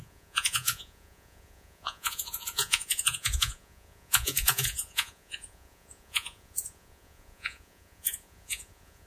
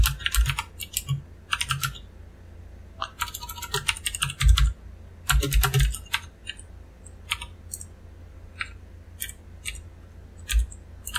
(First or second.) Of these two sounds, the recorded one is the second